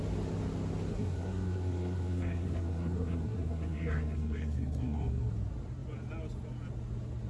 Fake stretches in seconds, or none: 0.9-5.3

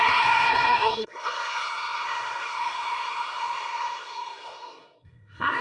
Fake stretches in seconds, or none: 0.0-5.6

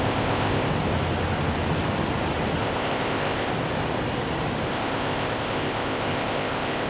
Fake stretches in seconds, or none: 0.0-0.7; 2.6-3.5; 4.7-6.9